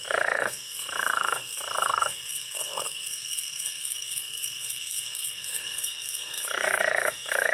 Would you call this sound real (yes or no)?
no